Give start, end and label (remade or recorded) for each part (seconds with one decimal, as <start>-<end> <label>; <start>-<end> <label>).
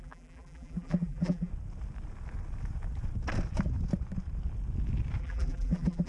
0.0-1.5 remade; 1.5-5.2 recorded; 5.2-6.1 remade